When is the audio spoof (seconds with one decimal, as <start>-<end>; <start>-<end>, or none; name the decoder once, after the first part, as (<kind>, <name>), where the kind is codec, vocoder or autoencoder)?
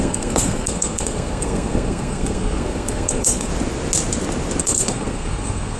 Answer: 0.0-3.5 (codec, SNAC); 4.6-5.8